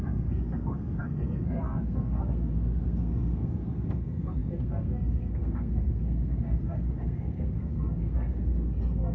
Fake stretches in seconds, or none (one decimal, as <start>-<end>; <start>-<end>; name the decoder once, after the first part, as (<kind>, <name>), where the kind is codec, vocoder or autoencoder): 0.0-9.1 (codec, SNAC)